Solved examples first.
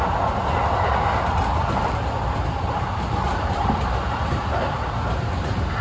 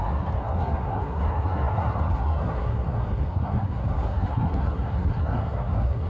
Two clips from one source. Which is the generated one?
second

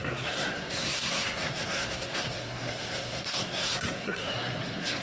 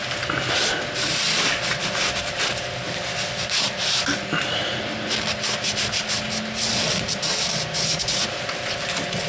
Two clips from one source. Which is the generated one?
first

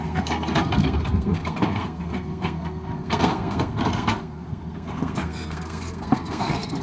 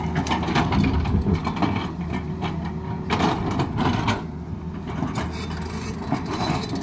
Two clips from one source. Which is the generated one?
first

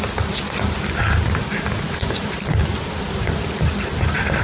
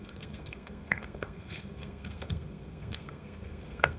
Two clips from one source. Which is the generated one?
second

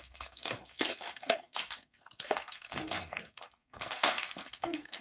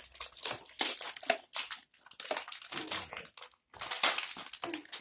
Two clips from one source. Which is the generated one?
first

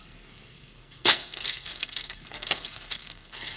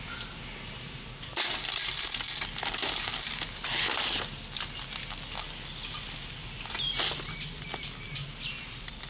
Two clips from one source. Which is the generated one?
first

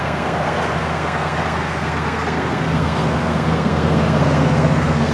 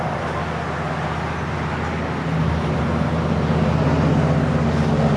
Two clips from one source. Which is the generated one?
first